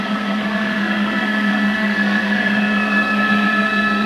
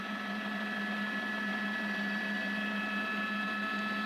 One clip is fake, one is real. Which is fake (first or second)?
first